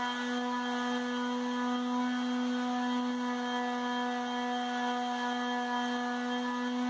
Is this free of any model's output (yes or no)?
yes